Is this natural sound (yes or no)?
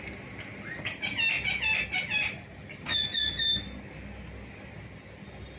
yes